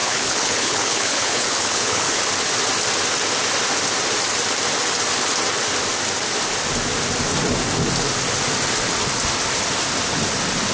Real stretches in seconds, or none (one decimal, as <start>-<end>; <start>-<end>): 2.2-10.7